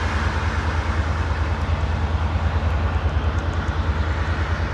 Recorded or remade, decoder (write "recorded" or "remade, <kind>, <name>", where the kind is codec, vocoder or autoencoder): recorded